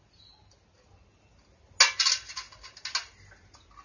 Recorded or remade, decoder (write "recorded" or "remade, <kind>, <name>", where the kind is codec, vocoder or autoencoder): recorded